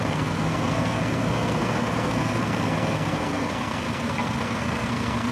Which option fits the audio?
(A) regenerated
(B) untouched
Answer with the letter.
A